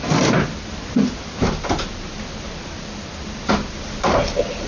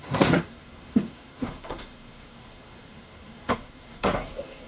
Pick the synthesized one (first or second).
second